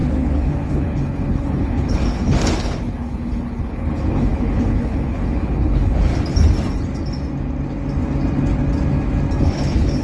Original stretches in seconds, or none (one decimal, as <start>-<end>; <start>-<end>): 6.1-9.4